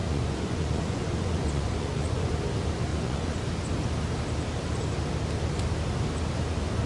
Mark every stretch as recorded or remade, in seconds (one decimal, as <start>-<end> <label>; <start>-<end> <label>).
0.0-2.3 remade; 2.3-2.9 recorded; 2.9-3.5 remade; 3.5-6.9 recorded